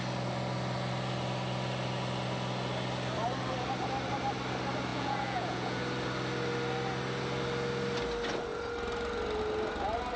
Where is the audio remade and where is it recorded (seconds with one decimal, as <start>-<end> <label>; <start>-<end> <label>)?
0.0-4.9 recorded; 4.9-5.8 remade; 5.8-10.2 recorded